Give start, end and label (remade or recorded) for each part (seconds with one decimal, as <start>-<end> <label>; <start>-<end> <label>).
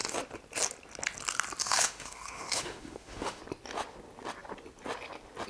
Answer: 0.0-1.6 recorded; 1.6-3.4 remade; 3.4-5.5 recorded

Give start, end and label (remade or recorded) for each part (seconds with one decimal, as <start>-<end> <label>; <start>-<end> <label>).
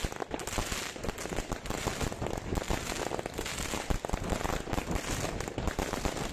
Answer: 0.0-0.8 recorded; 0.8-6.3 remade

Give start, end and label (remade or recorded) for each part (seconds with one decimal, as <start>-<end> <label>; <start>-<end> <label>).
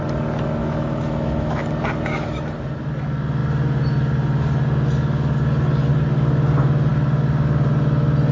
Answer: 0.0-0.6 recorded; 0.6-1.6 remade; 1.6-8.3 recorded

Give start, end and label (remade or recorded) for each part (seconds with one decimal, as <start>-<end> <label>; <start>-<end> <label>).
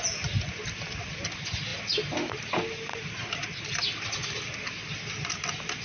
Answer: 0.0-5.8 recorded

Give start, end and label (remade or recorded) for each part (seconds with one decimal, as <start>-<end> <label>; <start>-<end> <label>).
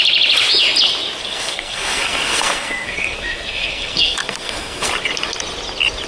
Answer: 0.0-1.2 recorded; 1.2-4.9 remade; 4.9-6.1 recorded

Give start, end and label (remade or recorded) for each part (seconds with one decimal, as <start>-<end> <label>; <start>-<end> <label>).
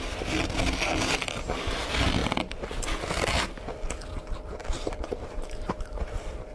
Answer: 0.0-4.6 recorded; 4.6-6.5 remade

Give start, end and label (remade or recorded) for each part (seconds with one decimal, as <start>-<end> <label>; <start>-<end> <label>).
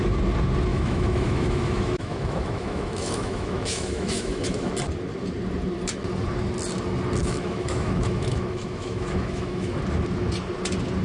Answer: 0.0-0.7 recorded; 0.7-4.7 remade; 4.7-7.2 recorded; 7.2-9.8 remade; 9.8-11.0 recorded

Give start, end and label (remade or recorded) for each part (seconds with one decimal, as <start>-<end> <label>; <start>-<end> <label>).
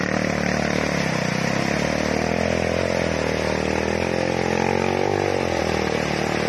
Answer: 0.0-6.5 recorded